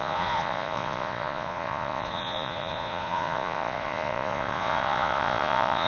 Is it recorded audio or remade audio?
remade